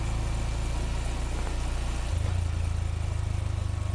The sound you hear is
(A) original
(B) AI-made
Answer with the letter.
A